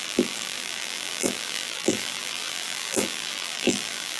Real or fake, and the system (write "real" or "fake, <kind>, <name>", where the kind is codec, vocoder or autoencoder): fake, vocoder, BigVGAN v2